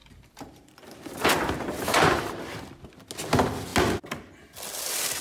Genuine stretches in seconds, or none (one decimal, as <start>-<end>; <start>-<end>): 2.0-5.2